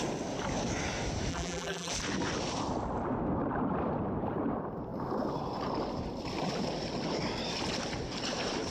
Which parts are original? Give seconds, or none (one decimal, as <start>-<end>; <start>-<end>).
0.0-1.3; 1.9-8.7